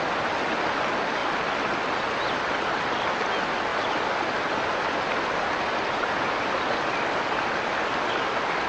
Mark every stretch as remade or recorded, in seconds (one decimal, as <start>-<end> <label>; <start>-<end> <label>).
0.0-8.7 recorded

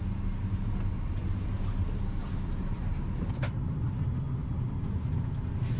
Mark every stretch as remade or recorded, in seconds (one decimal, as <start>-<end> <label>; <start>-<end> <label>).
0.0-5.8 recorded

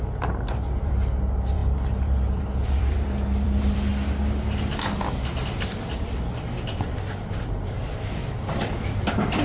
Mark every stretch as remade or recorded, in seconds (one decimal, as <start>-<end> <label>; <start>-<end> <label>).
0.0-3.9 remade; 3.9-7.3 recorded; 7.3-9.4 remade

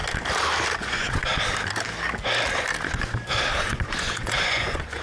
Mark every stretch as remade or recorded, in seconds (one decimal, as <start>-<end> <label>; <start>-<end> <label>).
0.0-0.8 recorded; 0.8-1.3 remade; 1.3-3.6 recorded; 3.6-5.0 remade

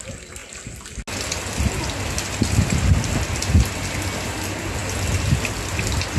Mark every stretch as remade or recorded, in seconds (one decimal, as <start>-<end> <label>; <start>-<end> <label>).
0.0-6.2 recorded

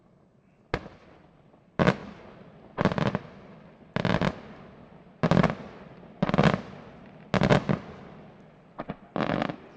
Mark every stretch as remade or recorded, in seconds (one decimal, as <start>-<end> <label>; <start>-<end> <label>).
0.0-9.8 recorded

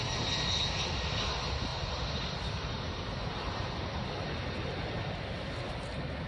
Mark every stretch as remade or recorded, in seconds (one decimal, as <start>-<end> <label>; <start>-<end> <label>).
0.0-6.3 recorded

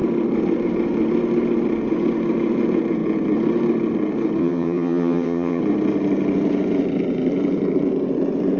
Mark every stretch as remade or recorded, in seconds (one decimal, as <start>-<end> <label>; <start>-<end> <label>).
0.0-4.4 recorded; 4.4-5.6 remade; 5.6-8.6 recorded